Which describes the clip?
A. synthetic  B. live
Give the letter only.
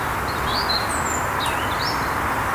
B